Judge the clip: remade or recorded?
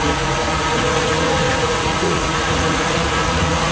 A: remade